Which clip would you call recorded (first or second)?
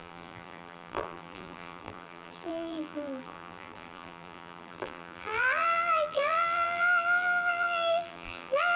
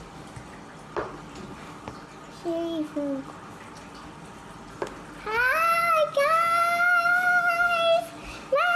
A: second